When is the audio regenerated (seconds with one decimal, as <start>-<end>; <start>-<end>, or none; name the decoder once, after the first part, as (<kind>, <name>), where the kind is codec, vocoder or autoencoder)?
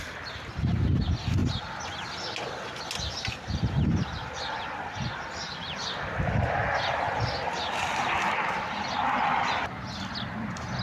0.0-1.4 (vocoder, BigVGAN v2); 3.3-10.8